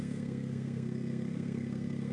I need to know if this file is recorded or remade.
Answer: remade